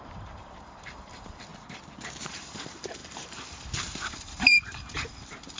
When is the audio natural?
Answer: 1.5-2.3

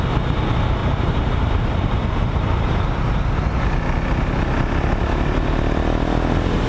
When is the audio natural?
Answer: 0.0-0.8; 3.0-6.7

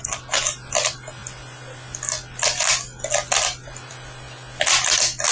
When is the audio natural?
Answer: 0.0-5.3